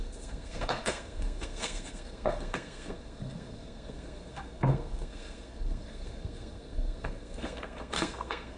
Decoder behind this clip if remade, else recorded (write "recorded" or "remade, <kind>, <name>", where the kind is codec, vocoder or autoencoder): remade, codec, SNAC